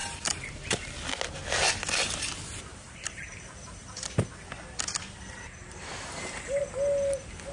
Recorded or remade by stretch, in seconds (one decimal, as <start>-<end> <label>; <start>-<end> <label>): 0.0-0.5 remade; 0.5-2.7 recorded; 2.7-4.1 remade; 4.1-5.6 recorded; 5.6-6.6 remade; 6.6-7.5 recorded